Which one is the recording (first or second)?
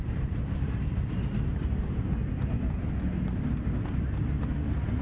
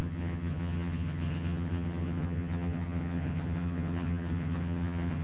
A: first